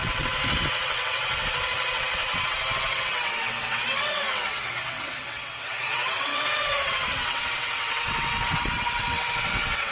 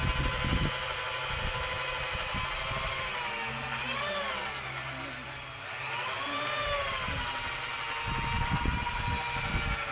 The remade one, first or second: first